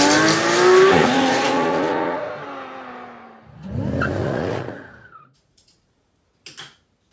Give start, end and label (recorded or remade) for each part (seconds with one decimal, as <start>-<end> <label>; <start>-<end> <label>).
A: 0.0-1.0 recorded; 1.0-2.3 remade; 2.3-4.2 recorded; 4.2-6.1 remade; 6.1-7.1 recorded